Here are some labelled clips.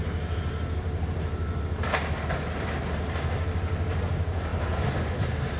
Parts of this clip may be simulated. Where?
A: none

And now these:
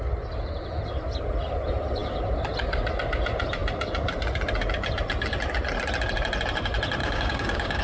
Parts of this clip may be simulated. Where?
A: 7.0-7.8 (codec, DAC)

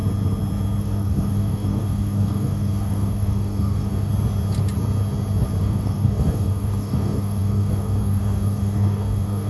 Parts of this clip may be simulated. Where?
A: 0.8-4.1 (codec, DAC); 5.6-9.5